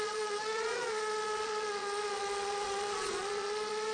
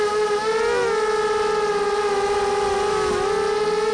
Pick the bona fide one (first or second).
second